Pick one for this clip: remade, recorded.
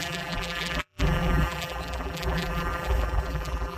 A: remade